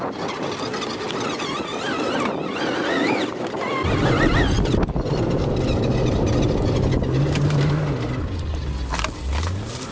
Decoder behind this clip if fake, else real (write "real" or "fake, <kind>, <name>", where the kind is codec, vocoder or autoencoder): real